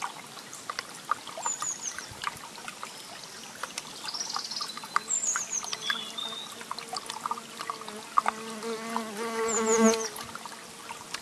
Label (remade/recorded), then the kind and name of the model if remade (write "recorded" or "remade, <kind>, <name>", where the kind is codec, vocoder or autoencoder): recorded